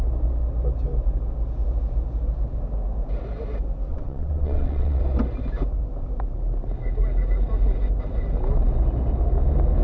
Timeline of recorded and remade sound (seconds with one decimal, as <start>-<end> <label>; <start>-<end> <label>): 0.0-3.9 recorded; 3.9-5.0 remade; 5.0-9.8 recorded